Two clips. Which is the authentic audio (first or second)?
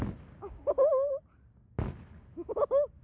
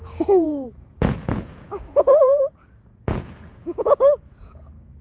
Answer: first